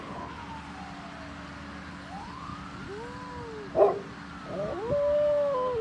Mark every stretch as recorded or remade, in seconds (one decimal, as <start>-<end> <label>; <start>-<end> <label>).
0.0-0.4 remade; 0.4-1.9 recorded; 1.9-2.5 remade; 2.5-5.8 recorded